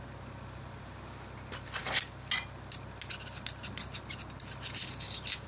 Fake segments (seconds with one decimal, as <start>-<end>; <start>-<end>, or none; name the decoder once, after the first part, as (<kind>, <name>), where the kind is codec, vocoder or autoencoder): none